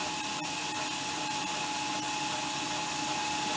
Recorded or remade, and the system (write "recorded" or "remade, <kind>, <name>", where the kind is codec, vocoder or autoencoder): recorded